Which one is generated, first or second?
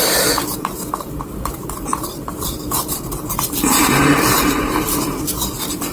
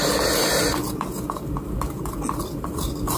first